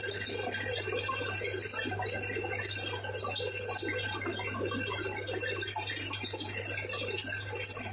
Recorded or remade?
recorded